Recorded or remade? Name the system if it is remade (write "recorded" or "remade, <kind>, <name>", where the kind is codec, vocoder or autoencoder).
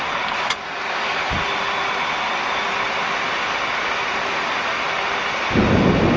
recorded